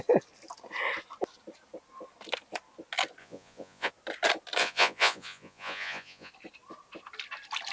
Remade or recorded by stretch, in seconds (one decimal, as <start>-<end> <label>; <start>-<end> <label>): 0.0-3.2 recorded; 3.2-3.9 remade; 3.9-4.6 recorded; 4.6-6.3 remade; 6.3-7.7 recorded